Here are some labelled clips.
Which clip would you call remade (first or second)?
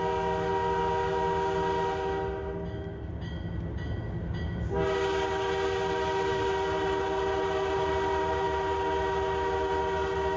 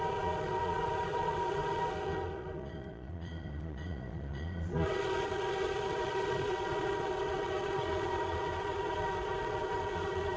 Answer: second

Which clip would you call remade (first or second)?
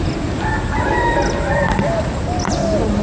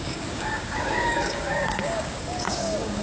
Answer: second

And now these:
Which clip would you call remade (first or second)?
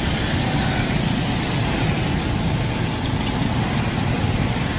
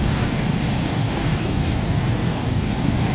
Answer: second